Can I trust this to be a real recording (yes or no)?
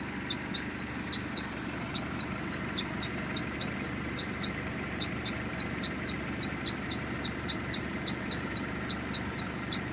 no